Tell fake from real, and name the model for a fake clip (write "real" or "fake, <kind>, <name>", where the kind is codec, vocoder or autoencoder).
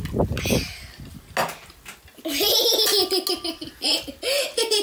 real